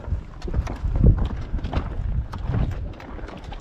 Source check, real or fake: real